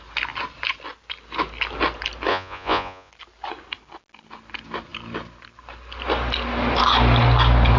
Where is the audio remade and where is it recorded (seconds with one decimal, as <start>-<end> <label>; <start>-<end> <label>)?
0.0-2.3 recorded; 2.3-3.1 remade; 3.1-7.8 recorded